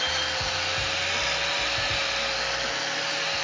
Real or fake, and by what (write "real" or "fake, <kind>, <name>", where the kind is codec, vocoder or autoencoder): real